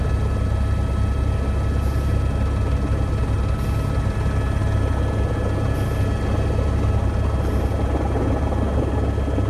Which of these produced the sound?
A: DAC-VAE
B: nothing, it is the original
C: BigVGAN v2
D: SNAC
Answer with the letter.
B